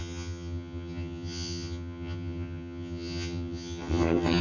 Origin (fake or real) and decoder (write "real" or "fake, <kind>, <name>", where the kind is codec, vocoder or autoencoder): fake, vocoder, HiFi-GAN